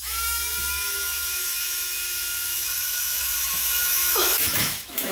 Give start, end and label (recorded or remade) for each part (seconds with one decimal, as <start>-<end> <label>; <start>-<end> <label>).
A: 0.0-5.1 remade